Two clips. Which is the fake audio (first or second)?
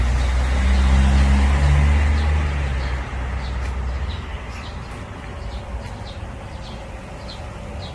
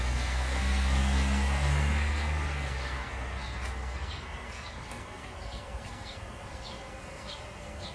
second